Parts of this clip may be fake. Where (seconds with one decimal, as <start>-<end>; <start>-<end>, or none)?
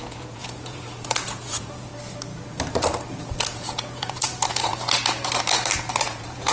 0.0-1.9; 3.1-4.7; 6.0-6.5